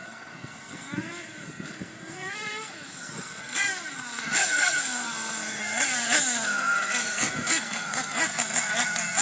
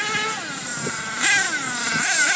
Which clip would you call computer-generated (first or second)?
first